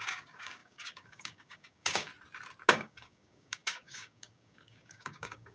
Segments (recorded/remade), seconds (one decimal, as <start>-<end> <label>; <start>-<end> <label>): 0.0-2.1 remade; 2.1-2.7 recorded; 2.7-5.5 remade